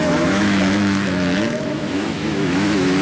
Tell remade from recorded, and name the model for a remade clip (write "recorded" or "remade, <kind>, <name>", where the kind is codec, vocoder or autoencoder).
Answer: remade, autoencoder, DAC-VAE